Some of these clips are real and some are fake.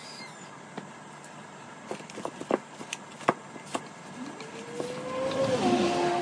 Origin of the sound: real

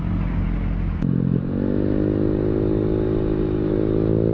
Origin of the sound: real